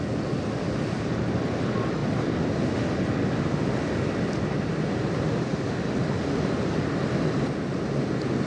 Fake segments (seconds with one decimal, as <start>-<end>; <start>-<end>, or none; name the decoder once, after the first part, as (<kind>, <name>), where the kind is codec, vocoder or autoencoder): none